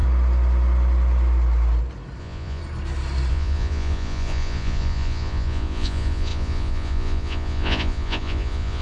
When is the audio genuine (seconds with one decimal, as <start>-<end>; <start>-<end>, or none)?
0.0-2.2; 2.6-3.3